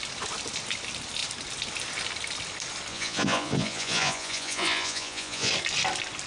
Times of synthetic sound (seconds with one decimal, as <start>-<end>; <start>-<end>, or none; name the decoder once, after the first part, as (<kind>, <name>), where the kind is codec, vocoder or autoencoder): 2.9-5.5 (vocoder, Vocos)